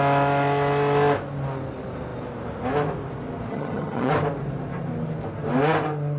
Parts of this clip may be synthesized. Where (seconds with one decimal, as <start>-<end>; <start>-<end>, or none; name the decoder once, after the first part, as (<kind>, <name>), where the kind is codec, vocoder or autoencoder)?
3.5-4.1 (vocoder, HiFi-GAN)